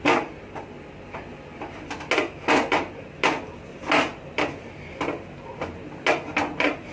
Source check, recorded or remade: recorded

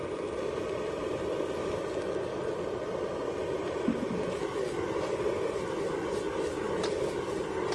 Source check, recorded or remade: recorded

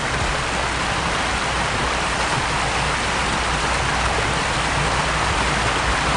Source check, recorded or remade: recorded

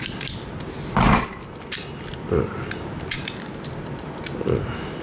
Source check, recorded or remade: recorded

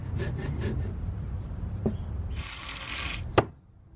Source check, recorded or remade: recorded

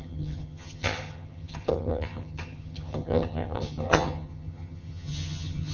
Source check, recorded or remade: remade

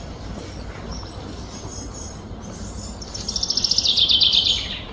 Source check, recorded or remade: remade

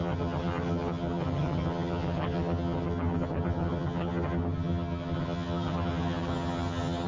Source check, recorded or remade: remade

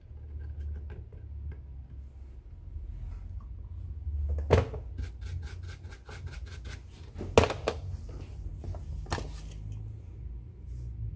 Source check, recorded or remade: recorded